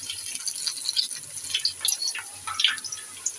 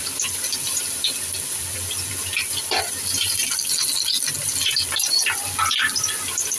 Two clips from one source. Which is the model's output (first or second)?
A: second